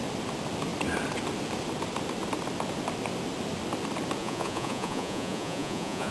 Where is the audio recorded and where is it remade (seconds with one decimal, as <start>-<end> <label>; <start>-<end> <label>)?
0.0-4.2 recorded; 4.2-6.1 remade